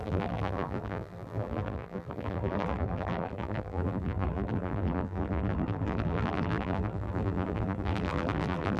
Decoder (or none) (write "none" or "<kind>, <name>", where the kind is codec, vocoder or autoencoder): vocoder, BigVGAN v2